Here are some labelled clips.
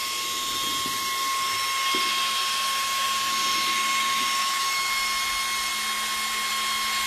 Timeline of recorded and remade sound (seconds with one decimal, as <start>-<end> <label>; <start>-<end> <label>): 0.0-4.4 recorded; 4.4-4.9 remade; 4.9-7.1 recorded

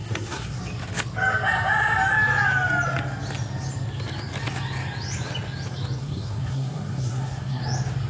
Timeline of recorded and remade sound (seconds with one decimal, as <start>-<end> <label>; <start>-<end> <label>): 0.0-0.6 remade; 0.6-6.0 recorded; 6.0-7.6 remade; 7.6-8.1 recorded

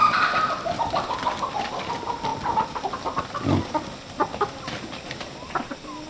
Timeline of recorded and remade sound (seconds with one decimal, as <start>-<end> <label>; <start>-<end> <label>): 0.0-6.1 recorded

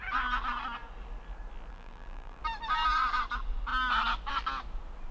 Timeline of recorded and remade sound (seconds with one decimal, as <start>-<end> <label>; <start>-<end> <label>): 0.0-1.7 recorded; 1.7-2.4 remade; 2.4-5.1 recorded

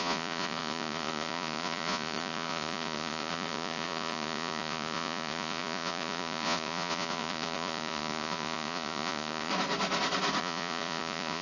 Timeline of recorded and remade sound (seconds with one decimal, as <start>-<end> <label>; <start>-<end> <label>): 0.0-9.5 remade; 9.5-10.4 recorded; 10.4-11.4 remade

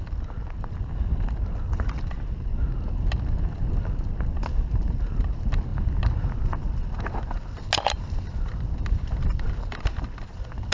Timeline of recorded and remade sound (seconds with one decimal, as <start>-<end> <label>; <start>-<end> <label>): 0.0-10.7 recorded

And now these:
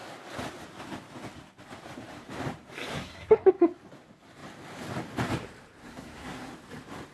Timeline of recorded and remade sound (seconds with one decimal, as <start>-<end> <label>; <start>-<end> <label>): 0.0-2.9 recorded; 2.9-3.5 remade; 3.5-5.8 recorded; 5.8-6.5 remade; 6.5-7.1 recorded

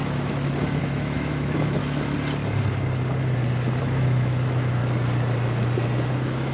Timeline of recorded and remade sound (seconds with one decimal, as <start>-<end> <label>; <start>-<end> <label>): 0.0-1.8 remade; 1.8-3.8 recorded; 3.8-4.8 remade; 4.8-6.1 recorded; 6.1-6.5 remade